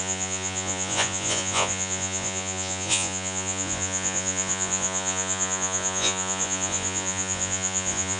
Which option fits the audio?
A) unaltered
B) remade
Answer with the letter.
B